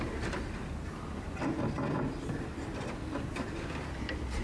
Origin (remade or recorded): recorded